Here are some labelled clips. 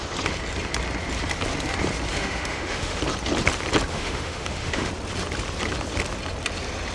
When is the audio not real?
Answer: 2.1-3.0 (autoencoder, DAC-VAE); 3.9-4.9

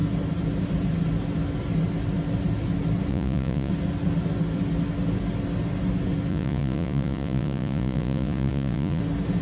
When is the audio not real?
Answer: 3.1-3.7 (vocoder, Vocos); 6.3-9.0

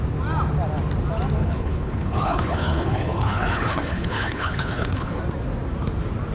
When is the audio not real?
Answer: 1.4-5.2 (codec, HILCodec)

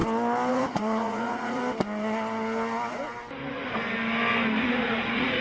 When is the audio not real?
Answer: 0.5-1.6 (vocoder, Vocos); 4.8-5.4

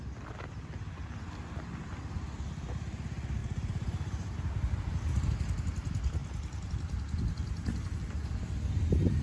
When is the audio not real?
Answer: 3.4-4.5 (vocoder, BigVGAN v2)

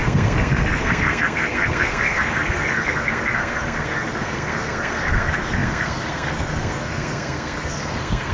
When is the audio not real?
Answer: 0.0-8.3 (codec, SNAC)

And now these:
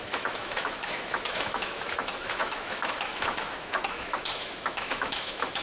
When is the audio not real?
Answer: 0.0-5.6 (autoencoder, DAC-VAE)

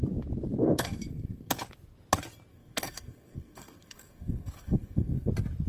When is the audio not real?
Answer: 0.6-1.5 (codec, SNAC); 2.5-5.3